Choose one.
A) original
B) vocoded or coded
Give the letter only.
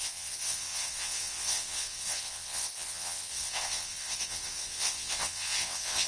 B